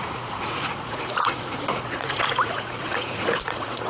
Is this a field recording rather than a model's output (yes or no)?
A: no